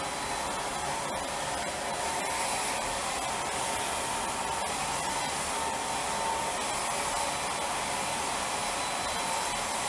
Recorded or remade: recorded